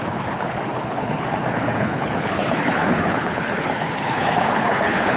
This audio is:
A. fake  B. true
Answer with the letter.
A